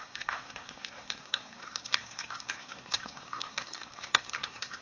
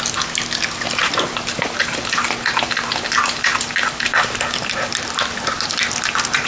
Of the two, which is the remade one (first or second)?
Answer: first